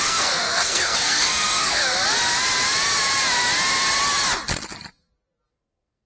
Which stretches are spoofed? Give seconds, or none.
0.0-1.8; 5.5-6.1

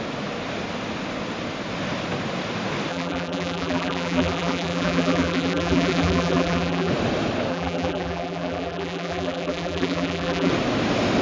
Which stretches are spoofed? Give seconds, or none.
2.9-6.9; 7.5-10.5